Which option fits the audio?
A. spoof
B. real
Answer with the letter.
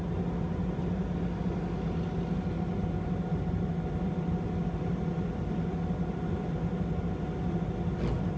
B